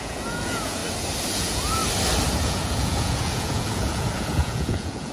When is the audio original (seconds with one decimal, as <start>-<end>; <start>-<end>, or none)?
0.8-1.3; 1.8-2.4